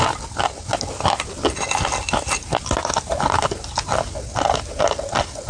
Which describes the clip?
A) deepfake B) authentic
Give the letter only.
B